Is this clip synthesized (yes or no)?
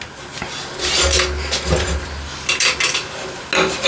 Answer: no